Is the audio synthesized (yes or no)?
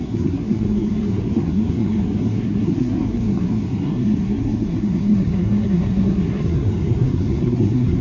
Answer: yes